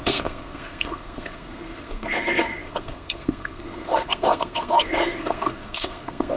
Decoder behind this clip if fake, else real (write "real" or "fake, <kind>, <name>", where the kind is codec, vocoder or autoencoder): fake, codec, SNAC